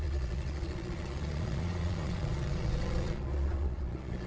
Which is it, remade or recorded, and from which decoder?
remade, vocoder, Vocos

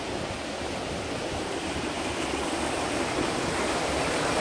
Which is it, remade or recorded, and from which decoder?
recorded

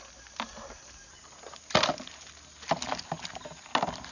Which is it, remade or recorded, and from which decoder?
recorded